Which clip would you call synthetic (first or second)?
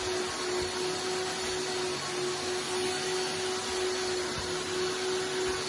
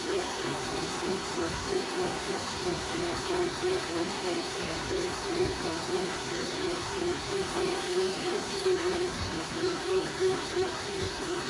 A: second